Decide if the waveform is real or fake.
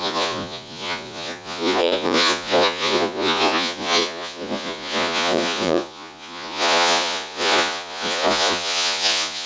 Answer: fake